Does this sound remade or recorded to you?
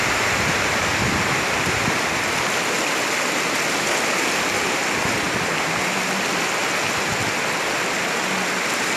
recorded